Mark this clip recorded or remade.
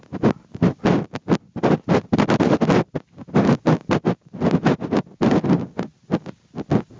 recorded